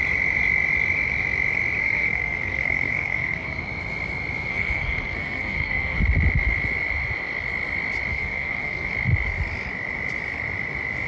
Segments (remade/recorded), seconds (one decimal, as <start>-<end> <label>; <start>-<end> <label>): 0.0-1.8 recorded; 1.8-3.6 remade; 3.6-4.5 recorded; 4.5-6.0 remade; 6.0-8.1 recorded; 8.1-8.9 remade; 8.9-11.1 recorded